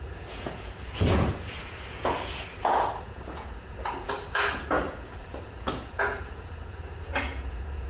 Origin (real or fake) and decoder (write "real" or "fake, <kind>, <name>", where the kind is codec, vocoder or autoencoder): fake, vocoder, Vocos